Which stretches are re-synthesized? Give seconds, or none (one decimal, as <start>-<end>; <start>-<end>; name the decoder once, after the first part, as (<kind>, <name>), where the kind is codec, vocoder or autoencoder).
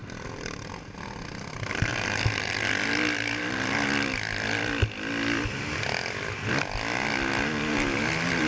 none